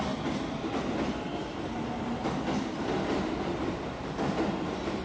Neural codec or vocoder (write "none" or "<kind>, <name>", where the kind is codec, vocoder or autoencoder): none